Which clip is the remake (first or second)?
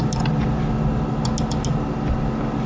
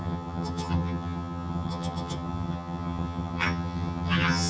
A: second